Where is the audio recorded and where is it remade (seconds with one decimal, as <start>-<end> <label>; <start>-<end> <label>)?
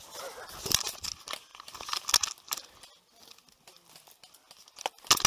0.0-5.3 recorded